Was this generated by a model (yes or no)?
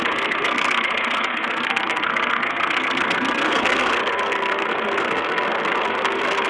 yes